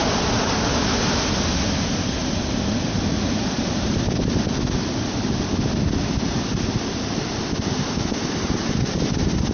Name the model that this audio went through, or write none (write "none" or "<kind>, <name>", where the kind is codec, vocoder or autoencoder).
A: vocoder, BigVGAN v2